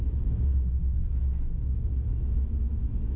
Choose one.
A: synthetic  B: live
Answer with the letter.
A